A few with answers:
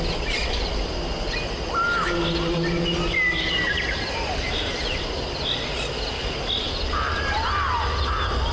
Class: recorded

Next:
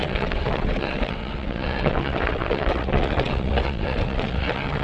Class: remade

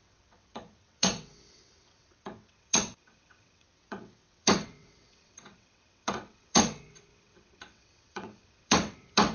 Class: remade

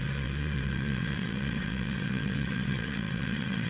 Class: remade